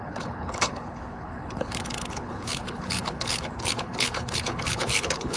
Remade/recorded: remade